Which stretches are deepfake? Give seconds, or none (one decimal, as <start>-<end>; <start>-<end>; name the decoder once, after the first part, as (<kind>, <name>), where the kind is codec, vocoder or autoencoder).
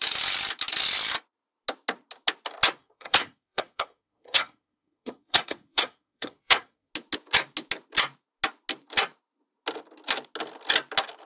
2.8-6.9 (codec, SNAC)